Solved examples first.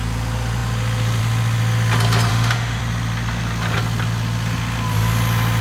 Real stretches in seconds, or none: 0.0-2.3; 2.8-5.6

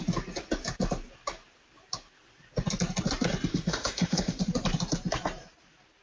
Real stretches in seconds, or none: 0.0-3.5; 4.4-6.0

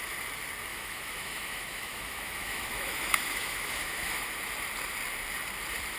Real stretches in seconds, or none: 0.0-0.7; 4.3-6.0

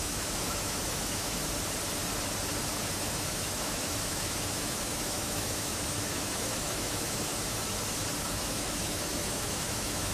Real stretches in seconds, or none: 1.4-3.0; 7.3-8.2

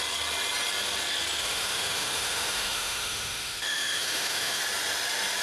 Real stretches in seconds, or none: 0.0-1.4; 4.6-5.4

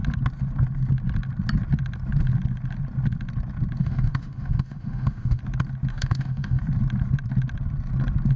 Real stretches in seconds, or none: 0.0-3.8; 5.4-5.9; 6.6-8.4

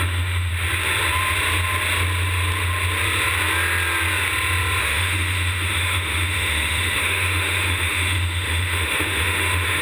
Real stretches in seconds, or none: 0.5-4.8